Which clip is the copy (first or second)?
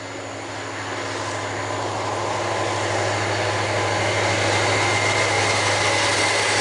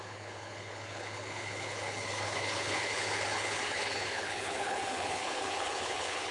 second